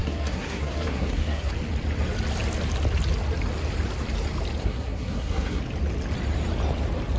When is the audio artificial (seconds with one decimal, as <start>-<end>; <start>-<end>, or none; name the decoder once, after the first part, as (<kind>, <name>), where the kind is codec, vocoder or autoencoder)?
0.0-1.5 (codec, SNAC); 4.6-5.6